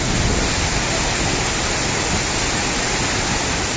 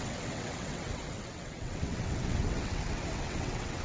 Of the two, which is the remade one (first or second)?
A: second